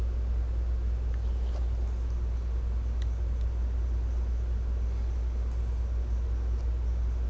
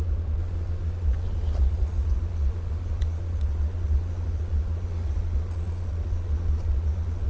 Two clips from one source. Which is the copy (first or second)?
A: second